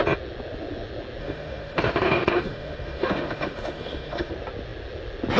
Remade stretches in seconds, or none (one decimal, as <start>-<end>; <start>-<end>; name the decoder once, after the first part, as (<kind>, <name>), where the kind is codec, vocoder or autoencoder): 1.2-4.3 (autoencoder, DAC-VAE)